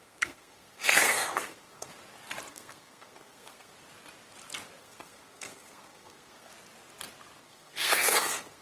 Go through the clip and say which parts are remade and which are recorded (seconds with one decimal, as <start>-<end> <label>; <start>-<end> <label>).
0.0-1.9 remade; 1.9-2.5 recorded; 2.5-3.7 remade; 3.7-4.8 recorded; 4.8-6.5 remade; 6.5-7.4 recorded; 7.4-8.6 remade